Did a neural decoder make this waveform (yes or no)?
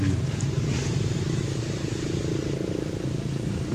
yes